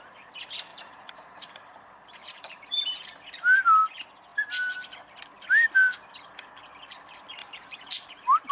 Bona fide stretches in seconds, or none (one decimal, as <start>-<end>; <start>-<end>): 0.0-0.7; 3.2-7.4; 8.1-8.5